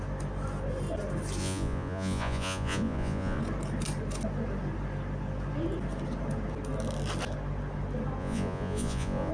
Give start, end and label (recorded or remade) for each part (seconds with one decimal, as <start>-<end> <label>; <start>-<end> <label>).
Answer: 0.0-1.4 recorded; 1.4-3.4 remade; 3.4-8.2 recorded; 8.2-9.3 remade